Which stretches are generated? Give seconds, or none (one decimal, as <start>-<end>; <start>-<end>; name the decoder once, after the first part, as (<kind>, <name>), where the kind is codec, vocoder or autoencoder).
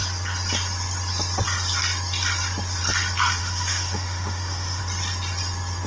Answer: 3.4-4.8 (autoencoder, DAC-VAE)